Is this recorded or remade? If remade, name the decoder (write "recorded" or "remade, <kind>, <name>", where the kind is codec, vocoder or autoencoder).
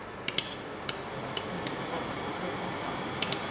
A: recorded